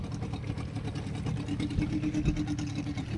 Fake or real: real